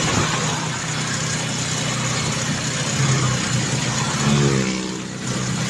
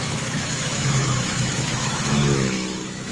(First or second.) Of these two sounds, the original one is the first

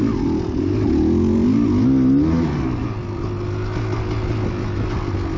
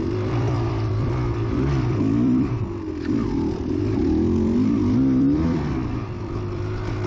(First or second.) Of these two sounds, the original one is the first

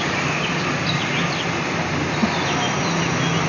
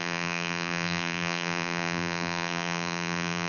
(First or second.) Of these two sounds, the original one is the first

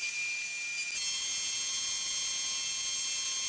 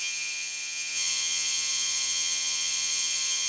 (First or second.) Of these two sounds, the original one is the first